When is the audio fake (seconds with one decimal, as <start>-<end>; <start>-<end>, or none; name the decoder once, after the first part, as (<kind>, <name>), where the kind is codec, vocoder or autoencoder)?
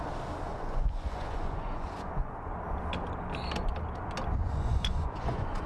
0.5-2.5 (vocoder, Vocos); 4.4-5.7